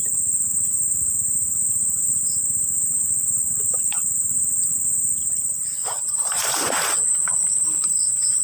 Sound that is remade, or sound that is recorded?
recorded